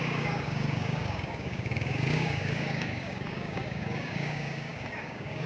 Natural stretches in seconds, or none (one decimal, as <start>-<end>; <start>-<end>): none